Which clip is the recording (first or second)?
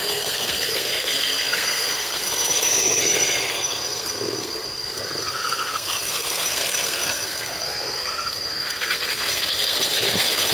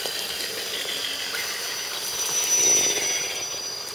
second